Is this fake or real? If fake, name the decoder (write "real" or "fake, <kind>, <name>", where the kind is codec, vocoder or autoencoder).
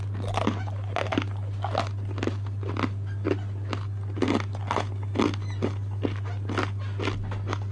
real